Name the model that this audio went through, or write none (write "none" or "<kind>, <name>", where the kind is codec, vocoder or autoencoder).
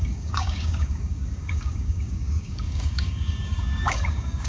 codec, DAC